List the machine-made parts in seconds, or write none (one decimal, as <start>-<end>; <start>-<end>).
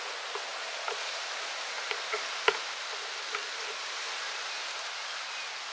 none